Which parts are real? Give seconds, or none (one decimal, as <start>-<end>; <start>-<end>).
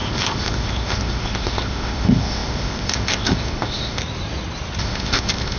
4.0-4.8